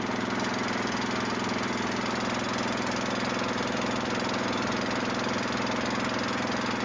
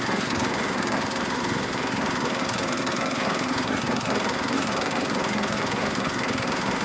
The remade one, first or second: second